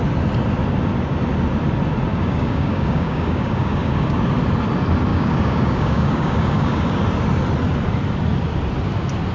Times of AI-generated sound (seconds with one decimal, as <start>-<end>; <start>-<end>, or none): 2.1-4.2; 5.1-7.0